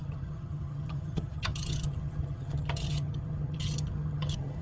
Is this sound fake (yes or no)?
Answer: yes